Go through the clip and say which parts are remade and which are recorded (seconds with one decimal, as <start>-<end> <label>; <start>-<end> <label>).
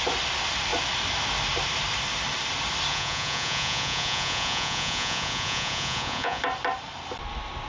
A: 0.0-2.9 recorded; 2.9-6.4 remade; 6.4-7.7 recorded